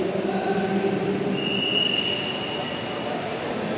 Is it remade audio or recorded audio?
recorded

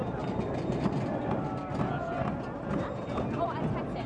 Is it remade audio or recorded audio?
recorded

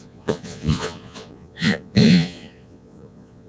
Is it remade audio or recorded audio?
remade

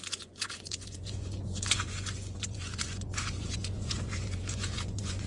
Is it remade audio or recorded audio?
remade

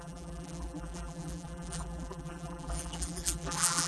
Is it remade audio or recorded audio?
remade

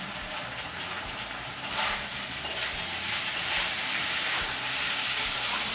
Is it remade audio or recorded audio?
remade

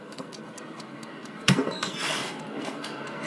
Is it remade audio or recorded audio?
remade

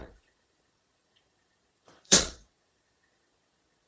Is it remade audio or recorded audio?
remade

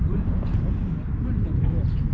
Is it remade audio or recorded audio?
recorded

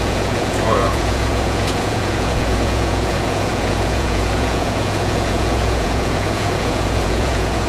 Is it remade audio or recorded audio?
remade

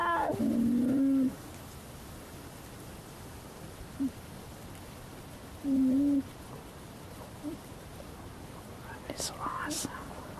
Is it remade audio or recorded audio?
recorded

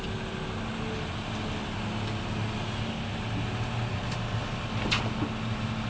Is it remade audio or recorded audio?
recorded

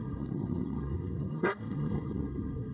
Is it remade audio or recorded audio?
remade